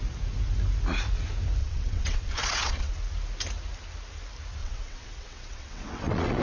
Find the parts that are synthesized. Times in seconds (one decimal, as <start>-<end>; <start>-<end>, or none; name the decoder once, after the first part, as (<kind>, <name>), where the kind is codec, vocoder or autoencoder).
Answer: 1.6-2.9 (vocoder, WaveNeXt); 4.6-6.4